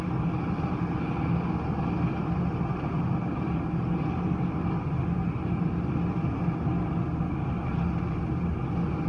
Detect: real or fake real